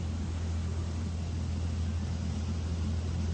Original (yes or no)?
yes